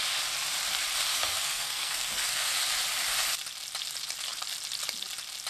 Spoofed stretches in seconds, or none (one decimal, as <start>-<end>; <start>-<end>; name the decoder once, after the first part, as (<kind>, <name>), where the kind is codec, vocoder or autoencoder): 1.1-2.5 (codec, SNAC)